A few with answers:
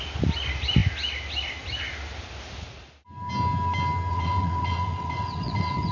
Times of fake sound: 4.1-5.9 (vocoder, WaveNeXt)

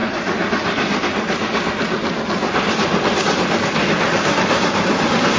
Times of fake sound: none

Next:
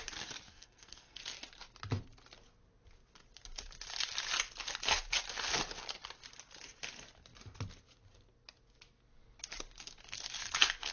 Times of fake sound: 0.5-1.2 (codec, SNAC)

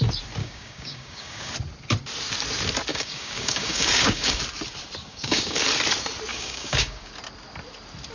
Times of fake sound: 0.4-1.5 (codec, DAC); 2.9-4.4; 5.1-5.6; 6.3-7.1